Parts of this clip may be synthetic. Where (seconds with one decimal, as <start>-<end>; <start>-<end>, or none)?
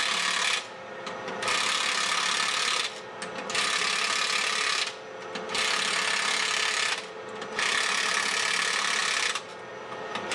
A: none